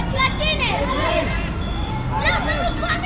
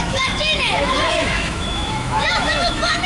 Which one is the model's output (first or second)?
second